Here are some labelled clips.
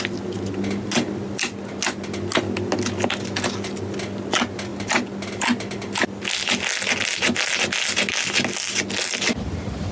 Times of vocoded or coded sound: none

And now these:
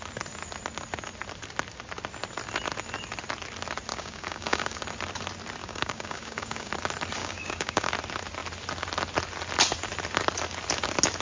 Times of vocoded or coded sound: 3.9-4.8; 5.6-6.7; 7.2-7.9

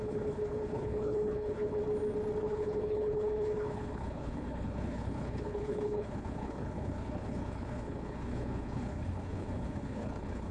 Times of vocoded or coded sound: 0.0-1.8; 2.4-10.5